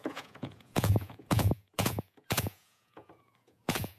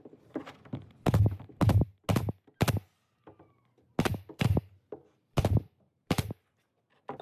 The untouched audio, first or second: second